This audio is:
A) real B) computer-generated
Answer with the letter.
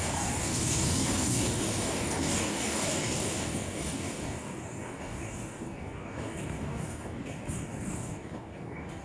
B